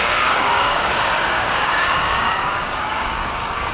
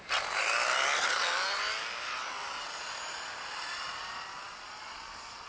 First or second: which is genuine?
second